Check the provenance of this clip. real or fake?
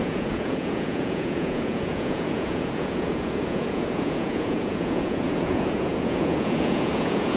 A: fake